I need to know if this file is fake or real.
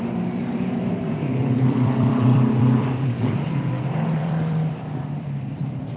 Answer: fake